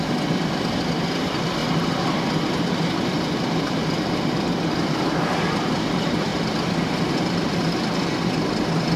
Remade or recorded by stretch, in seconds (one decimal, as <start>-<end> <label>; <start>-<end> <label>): 0.0-1.6 remade; 1.6-2.6 recorded; 2.6-6.3 remade; 6.3-7.1 recorded; 7.1-9.0 remade